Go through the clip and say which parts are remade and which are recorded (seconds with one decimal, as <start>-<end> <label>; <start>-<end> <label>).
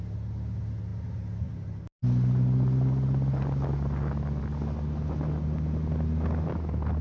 0.0-7.0 recorded